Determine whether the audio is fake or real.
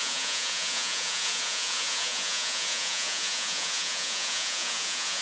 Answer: fake